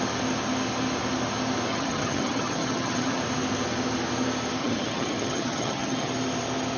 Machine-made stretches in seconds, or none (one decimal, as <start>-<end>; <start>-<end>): 1.7-3.2; 4.6-6.1